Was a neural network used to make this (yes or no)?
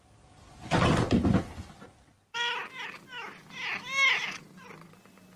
no